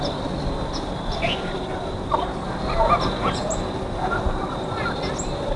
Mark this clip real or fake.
real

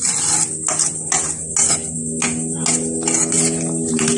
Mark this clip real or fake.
real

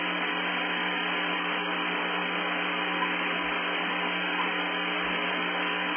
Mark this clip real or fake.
real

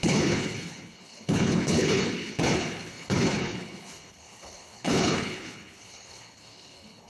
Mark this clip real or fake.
fake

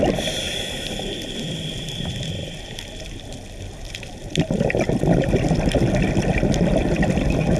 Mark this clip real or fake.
real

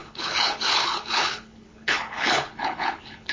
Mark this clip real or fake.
fake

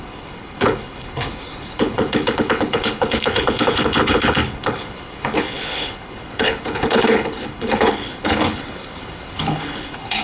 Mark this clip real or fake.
fake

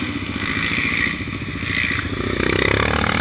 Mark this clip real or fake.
real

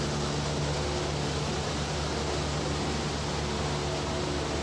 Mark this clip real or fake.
real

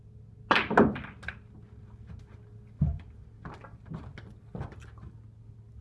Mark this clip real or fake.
real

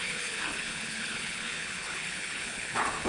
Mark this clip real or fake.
fake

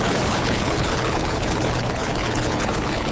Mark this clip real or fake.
fake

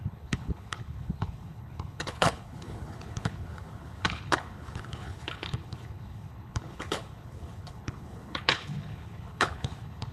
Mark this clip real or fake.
fake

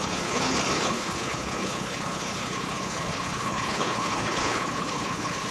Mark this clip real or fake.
fake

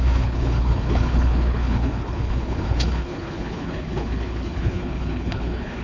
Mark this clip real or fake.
fake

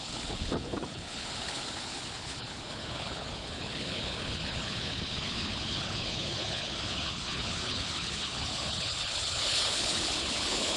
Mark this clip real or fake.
fake